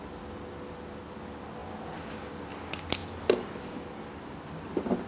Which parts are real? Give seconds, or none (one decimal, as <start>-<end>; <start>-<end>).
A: 0.0-5.1